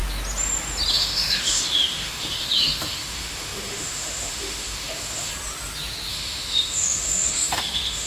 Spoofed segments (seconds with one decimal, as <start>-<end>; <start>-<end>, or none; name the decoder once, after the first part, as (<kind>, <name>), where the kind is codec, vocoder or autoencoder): 0.9-5.3 (autoencoder, DAC-VAE); 6.1-8.1